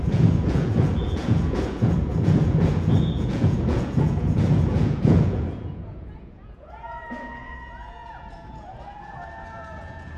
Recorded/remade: remade